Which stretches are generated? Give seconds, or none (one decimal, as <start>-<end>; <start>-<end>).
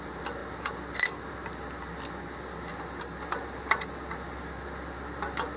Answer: none